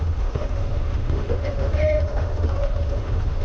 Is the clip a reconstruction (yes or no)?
yes